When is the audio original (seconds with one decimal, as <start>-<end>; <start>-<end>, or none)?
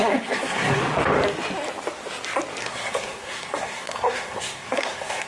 0.8-2.6